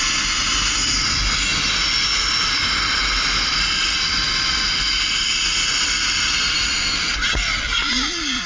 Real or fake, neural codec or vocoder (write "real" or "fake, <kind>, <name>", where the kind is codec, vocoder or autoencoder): real